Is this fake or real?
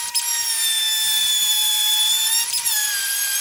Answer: fake